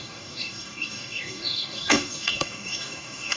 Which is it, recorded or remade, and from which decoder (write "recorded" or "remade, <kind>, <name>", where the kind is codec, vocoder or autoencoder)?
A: remade, codec, DAC